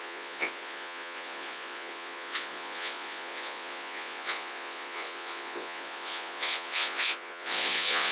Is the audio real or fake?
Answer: fake